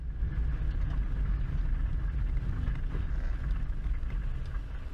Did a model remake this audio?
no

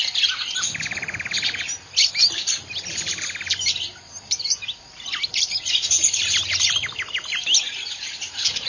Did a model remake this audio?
no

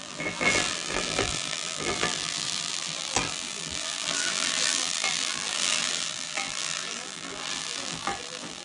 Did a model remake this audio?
yes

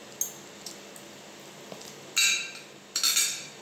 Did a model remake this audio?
no